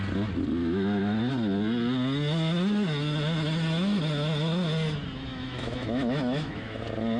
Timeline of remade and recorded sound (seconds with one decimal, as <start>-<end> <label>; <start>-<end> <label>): 0.0-0.6 recorded; 0.6-1.3 remade; 1.3-5.3 recorded; 5.3-6.8 remade; 6.8-7.2 recorded